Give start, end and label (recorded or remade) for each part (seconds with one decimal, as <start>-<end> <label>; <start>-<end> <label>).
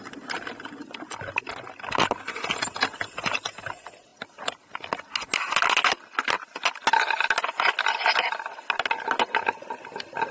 0.0-10.3 recorded